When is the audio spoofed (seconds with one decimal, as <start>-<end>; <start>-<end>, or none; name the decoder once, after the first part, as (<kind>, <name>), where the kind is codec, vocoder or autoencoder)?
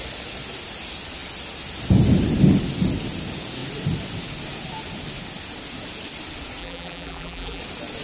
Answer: 6.6-7.6 (vocoder, BigVGAN v2)